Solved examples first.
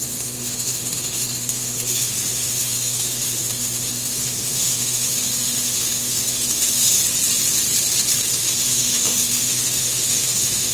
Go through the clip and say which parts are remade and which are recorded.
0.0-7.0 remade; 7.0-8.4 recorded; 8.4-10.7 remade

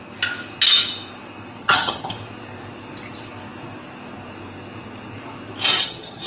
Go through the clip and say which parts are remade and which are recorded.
0.0-1.6 recorded; 1.6-2.1 remade; 2.1-5.8 recorded; 5.8-6.3 remade

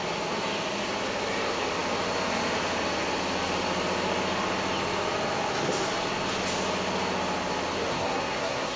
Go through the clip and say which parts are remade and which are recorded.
0.0-7.9 recorded; 7.9-8.8 remade

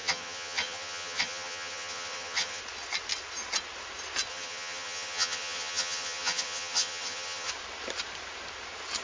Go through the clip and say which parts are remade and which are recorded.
0.0-2.6 remade; 2.6-4.3 recorded; 4.3-7.5 remade; 7.5-9.0 recorded

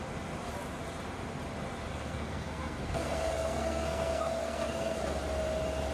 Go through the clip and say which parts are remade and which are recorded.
0.0-1.9 recorded; 1.9-5.0 remade; 5.0-5.9 recorded

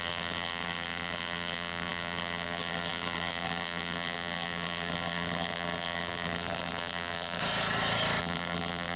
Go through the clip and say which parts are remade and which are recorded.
0.0-7.4 remade; 7.4-8.2 recorded; 8.2-9.0 remade

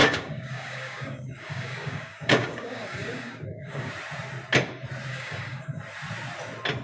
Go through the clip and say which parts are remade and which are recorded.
0.0-3.9 remade; 3.9-5.1 recorded; 5.1-5.8 remade; 5.8-6.8 recorded

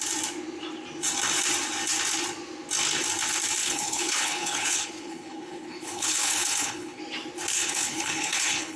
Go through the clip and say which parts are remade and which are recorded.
0.0-3.6 recorded; 3.6-7.0 remade; 7.0-7.5 recorded; 7.5-8.8 remade